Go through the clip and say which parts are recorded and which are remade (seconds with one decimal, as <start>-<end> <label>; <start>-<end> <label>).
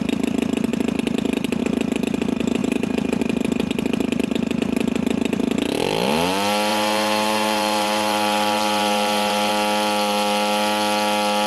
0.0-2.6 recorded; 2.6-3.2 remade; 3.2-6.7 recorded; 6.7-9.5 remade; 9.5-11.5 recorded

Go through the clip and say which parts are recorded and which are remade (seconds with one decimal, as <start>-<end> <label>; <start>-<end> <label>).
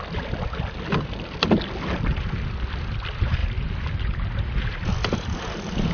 0.0-5.9 recorded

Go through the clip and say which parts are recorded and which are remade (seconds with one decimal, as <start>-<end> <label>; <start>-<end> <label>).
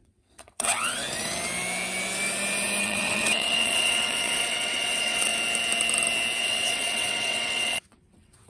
0.0-1.0 remade; 1.0-2.8 recorded; 2.8-5.3 remade; 5.3-6.4 recorded; 6.4-8.5 remade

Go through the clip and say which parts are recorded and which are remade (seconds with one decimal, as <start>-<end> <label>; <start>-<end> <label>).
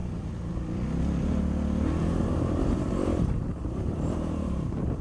0.0-0.5 remade; 0.5-2.0 recorded; 2.0-5.0 remade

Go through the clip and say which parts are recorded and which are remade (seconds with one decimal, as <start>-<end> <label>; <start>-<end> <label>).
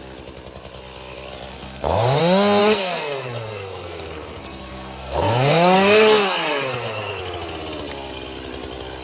0.0-1.5 recorded; 1.5-2.2 remade; 2.2-2.6 recorded; 2.6-7.2 remade; 7.2-9.0 recorded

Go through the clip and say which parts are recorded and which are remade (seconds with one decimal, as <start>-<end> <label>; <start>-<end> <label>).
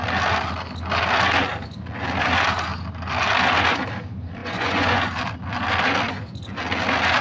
0.0-4.4 recorded; 4.4-5.0 remade; 5.0-7.2 recorded